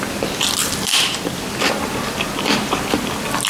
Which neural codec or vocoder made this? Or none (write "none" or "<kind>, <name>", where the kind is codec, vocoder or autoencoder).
vocoder, BigVGAN v2